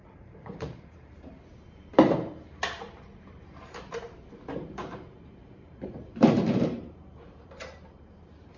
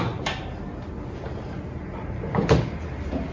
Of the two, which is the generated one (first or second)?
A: first